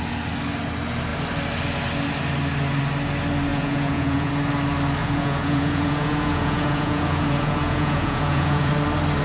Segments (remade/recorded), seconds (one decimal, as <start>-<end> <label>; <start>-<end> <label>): 0.0-3.5 recorded; 3.5-4.3 remade; 4.3-5.0 recorded; 5.0-8.7 remade; 8.7-9.2 recorded